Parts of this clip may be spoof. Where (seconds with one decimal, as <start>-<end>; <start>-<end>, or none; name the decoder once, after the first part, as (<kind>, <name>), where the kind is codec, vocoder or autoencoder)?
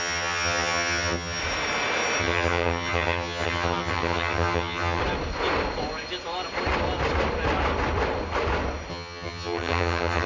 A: 0.0-1.4 (vocoder, HiFi-GAN); 2.2-5.0; 8.9-10.3